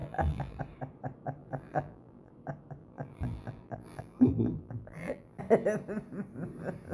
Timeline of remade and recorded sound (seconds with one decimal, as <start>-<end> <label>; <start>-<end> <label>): 0.0-0.6 remade; 0.6-1.4 recorded; 1.4-2.3 remade; 2.3-2.8 recorded; 2.8-5.4 remade; 5.4-6.9 recorded